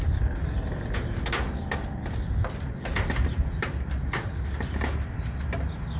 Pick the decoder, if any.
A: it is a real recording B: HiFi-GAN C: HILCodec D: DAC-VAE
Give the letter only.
A